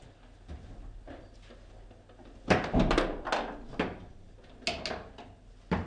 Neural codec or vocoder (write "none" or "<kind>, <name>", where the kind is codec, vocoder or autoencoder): none